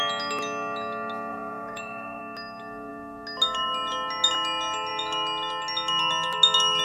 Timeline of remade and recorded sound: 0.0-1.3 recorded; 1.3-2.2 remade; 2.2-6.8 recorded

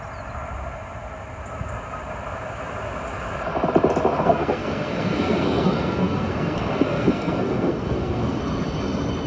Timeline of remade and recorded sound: 0.0-4.2 recorded; 4.2-8.4 remade; 8.4-9.3 recorded

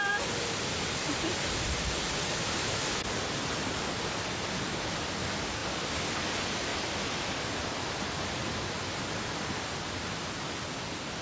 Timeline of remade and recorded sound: 0.0-11.2 recorded

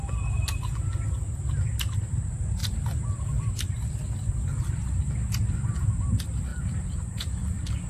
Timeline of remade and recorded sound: 0.0-2.6 recorded; 2.6-5.0 remade; 5.0-6.5 recorded; 6.5-7.9 remade

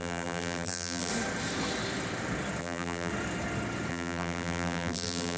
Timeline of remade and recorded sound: 0.0-1.1 remade; 1.1-2.6 recorded; 2.6-3.1 remade; 3.1-3.9 recorded; 3.9-5.4 remade